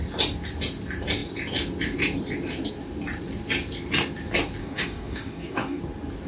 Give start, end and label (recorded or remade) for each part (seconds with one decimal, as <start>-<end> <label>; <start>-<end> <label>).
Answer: 0.0-4.6 recorded; 4.6-5.8 remade; 5.8-6.3 recorded